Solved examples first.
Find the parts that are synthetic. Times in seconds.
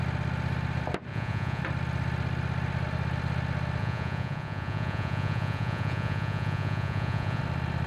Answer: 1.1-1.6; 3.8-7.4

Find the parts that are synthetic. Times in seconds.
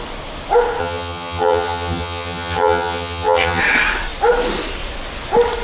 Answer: 0.8-3.6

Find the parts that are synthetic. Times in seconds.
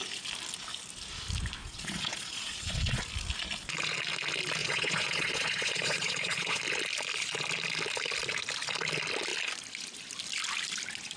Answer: 1.6-3.0; 4.6-6.6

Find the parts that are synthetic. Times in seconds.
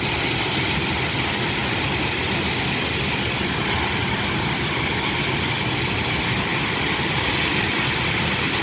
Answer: none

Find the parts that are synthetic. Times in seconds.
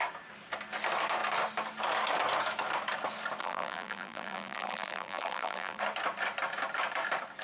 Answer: 3.4-5.8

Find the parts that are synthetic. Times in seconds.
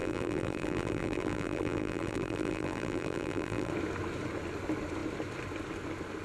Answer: 0.0-3.7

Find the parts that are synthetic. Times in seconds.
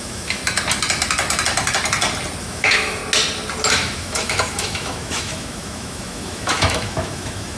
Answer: 0.0-0.4; 2.4-3.0; 3.7-7.6